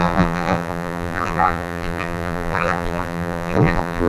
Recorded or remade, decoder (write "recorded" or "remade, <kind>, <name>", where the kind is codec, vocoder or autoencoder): remade, vocoder, BigVGAN v2